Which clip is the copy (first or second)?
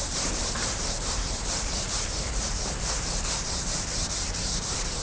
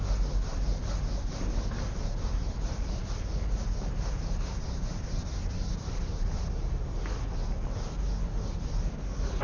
first